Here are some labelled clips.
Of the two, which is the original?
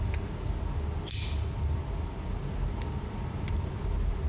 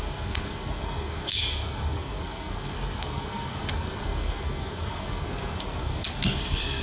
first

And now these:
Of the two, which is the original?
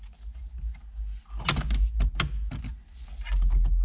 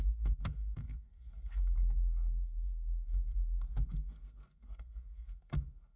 first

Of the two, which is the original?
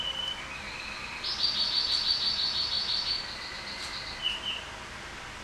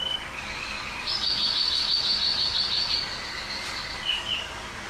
first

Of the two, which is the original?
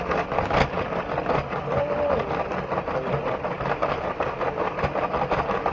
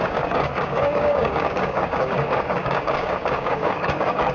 first